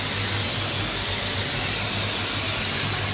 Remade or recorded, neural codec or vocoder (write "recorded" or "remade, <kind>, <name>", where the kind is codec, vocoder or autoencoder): recorded